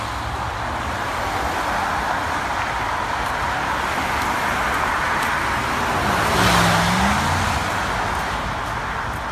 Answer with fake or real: real